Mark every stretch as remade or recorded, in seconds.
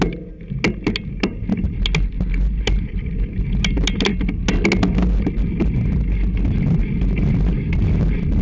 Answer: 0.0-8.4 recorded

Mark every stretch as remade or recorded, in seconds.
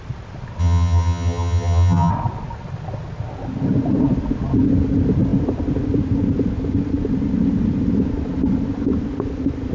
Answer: 0.0-0.6 recorded; 0.6-2.1 remade; 2.1-9.7 recorded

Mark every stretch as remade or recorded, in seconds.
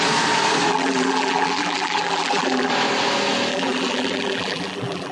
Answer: 0.0-0.7 recorded; 0.7-2.7 remade; 2.7-3.5 recorded; 3.5-5.1 remade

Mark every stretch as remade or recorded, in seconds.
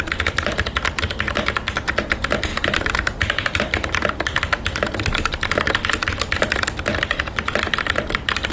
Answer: 0.0-2.5 recorded; 2.5-3.6 remade; 3.6-8.5 recorded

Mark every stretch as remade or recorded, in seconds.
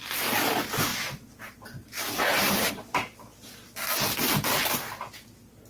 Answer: 0.0-0.9 recorded; 0.9-2.7 remade; 2.7-5.7 recorded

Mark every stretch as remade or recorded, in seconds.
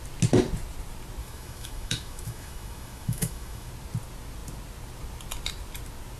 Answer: 0.0-1.2 recorded; 1.2-3.7 remade; 3.7-6.2 recorded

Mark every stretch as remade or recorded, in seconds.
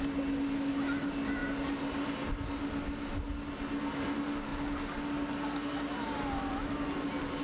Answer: 0.0-7.4 recorded